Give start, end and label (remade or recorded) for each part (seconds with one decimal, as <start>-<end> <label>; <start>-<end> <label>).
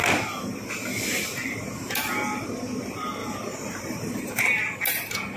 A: 0.0-3.2 recorded; 3.2-4.4 remade; 4.4-5.4 recorded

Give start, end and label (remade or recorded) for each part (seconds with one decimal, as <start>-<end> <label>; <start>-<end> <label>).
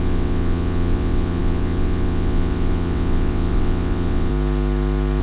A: 0.0-4.3 remade; 4.3-5.2 recorded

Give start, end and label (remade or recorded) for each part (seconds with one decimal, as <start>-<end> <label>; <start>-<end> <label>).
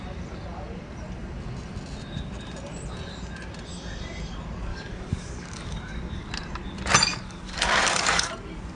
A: 0.0-4.7 recorded; 4.7-6.3 remade; 6.3-7.1 recorded; 7.1-8.3 remade; 8.3-8.8 recorded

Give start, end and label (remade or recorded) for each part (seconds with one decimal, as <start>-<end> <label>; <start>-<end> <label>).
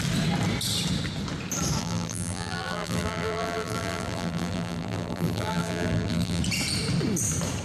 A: 0.0-1.8 recorded; 1.8-6.4 remade; 6.4-7.6 recorded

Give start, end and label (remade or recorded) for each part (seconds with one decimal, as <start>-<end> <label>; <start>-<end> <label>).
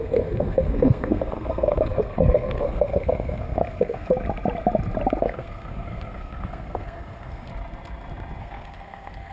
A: 0.0-4.1 remade; 4.1-5.2 recorded; 5.2-7.5 remade; 7.5-8.4 recorded; 8.4-9.3 remade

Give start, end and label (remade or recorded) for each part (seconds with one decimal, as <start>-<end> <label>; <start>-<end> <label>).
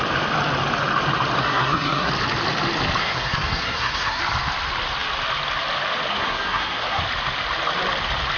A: 0.0-1.4 recorded; 1.4-2.1 remade; 2.1-3.0 recorded; 3.0-4.2 remade; 4.2-6.1 recorded; 6.1-7.0 remade; 7.0-8.4 recorded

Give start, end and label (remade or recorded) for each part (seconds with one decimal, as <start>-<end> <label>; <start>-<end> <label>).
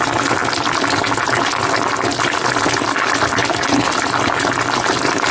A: 0.0-5.3 recorded